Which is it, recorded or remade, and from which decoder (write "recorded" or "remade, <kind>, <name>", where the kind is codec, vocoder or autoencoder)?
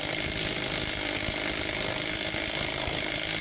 recorded